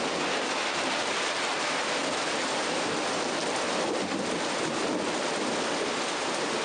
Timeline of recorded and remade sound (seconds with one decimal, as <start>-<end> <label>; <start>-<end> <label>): 0.0-2.0 recorded; 2.0-4.3 remade; 4.3-6.6 recorded